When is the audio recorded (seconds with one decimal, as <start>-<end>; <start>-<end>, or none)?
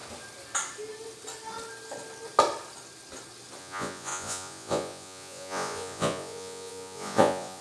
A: 0.0-3.6